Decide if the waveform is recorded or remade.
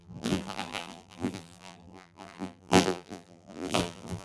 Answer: remade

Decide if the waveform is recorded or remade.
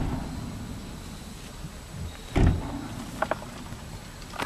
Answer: recorded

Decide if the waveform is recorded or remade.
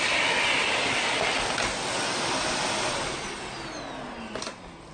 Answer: recorded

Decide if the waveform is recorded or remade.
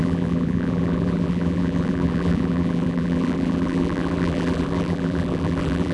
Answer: remade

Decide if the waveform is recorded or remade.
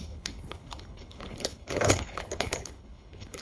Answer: remade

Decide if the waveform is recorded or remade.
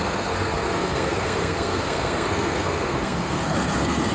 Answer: remade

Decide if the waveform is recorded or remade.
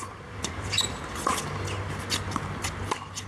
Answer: recorded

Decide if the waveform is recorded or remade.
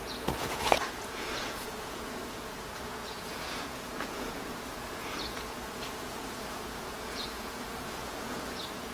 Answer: remade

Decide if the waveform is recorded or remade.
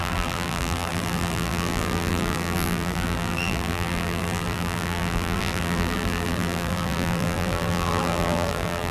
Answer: remade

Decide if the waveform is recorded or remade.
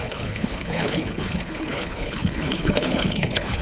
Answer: remade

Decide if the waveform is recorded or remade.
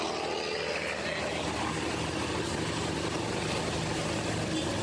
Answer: recorded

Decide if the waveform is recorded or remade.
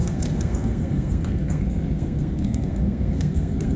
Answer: remade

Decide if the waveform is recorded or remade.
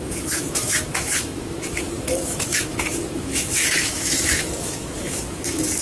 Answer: remade